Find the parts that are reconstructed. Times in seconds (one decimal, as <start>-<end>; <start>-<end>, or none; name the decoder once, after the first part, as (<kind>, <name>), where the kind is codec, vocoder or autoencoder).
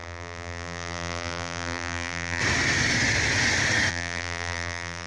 0.0-2.4 (vocoder, BigVGAN v2); 3.9-5.1